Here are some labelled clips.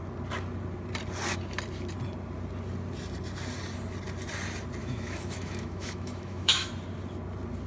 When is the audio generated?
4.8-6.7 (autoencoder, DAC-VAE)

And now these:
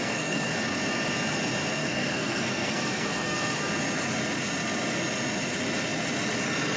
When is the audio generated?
0.0-0.5 (codec, SNAC); 1.8-3.6

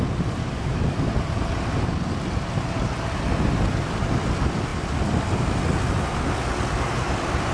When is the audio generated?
0.4-1.1 (codec, DAC)